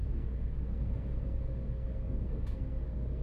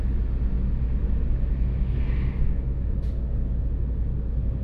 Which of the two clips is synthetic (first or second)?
first